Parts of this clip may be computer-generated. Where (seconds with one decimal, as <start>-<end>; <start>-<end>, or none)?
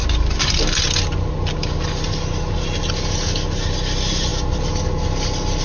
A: none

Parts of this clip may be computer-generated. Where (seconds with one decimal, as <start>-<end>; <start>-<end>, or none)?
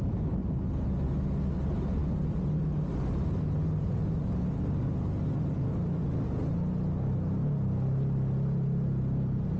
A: none